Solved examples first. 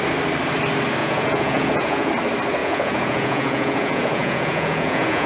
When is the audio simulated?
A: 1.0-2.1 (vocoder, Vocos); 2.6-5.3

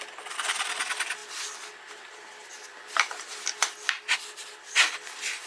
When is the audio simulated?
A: none